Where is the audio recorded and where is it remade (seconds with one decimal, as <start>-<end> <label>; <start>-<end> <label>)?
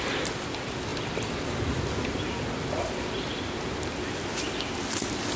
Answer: 0.0-5.4 recorded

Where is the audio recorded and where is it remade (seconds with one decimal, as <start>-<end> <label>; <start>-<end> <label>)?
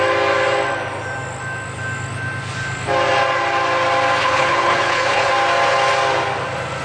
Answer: 0.0-4.2 recorded; 4.2-5.3 remade; 5.3-6.8 recorded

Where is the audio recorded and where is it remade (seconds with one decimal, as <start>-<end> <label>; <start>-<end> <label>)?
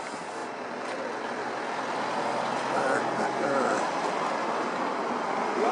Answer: 0.0-5.7 recorded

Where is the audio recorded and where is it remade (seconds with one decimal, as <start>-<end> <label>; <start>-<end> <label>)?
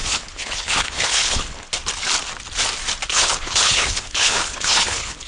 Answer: 0.0-1.7 remade; 1.7-3.1 recorded; 3.1-5.3 remade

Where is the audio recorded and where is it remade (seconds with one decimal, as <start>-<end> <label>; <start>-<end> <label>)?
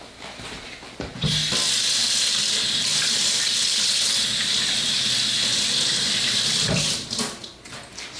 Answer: 0.0-3.6 recorded; 3.6-4.1 remade; 4.1-8.2 recorded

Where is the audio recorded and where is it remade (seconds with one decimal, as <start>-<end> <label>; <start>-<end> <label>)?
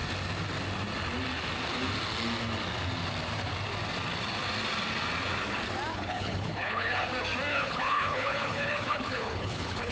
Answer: 0.0-5.9 recorded; 5.9-7.1 remade; 7.1-7.5 recorded; 7.5-9.9 remade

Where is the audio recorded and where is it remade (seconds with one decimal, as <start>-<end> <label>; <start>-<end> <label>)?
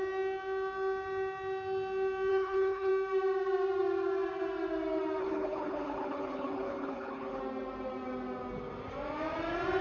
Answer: 0.0-2.3 recorded; 2.3-2.9 remade; 2.9-5.2 recorded; 5.2-7.4 remade; 7.4-9.8 recorded